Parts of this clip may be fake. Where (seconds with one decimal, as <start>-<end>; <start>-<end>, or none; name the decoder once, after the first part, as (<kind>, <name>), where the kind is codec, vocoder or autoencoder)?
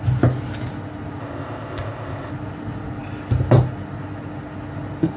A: 1.2-2.3 (codec, ZipCodec)